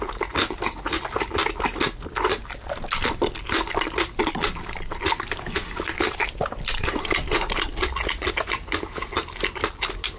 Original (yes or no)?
yes